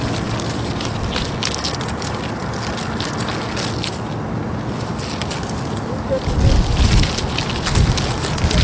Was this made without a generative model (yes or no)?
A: yes